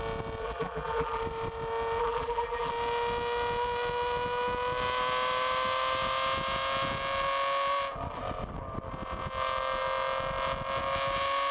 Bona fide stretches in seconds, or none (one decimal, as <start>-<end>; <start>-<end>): 0.0-0.4; 1.2-2.0; 2.7-11.5